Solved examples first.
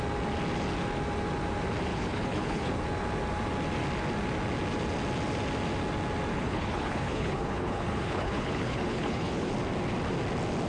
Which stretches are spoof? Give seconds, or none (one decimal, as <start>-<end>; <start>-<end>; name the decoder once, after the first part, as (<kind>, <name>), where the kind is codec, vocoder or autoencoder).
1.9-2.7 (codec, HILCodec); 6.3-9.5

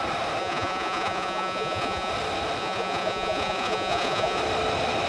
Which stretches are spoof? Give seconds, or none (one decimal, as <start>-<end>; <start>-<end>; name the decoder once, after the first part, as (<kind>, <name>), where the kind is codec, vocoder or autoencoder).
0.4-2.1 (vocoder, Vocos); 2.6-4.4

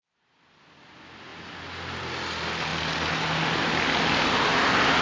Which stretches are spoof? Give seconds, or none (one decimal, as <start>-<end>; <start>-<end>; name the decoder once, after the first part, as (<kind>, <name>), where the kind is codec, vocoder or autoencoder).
none

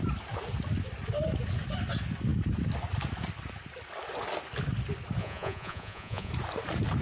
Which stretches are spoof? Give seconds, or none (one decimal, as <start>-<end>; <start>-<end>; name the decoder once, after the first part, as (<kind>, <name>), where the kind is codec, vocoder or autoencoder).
5.2-6.3 (vocoder, Vocos)

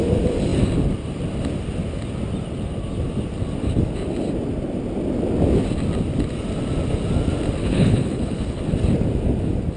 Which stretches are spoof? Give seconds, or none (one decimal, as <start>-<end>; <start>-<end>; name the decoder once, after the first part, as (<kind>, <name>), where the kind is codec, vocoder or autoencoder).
7.6-8.6 (codec, HILCodec)

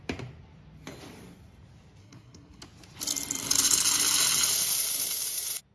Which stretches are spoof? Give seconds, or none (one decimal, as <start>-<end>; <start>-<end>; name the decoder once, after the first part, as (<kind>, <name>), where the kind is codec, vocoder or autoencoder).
2.0-2.6 (codec, SNAC)

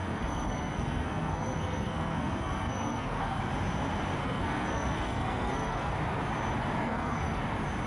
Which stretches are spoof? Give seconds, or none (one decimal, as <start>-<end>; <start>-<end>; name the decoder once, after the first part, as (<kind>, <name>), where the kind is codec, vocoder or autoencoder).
0.0-3.4 (codec, SNAC); 4.2-5.9; 6.8-7.4

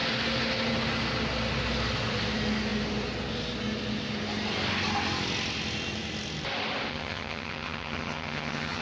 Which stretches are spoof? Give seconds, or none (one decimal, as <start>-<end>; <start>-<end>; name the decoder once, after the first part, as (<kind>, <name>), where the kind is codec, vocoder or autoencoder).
6.9-8.8 (vocoder, HiFi-GAN)